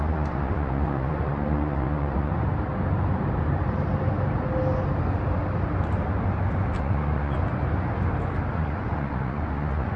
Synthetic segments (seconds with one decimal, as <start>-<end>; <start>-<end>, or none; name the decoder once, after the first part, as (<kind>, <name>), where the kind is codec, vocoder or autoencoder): 0.0-2.3 (vocoder, Vocos); 6.8-7.4; 8.5-10.0